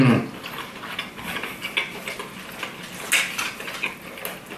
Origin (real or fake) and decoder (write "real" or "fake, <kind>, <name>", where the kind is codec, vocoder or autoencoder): real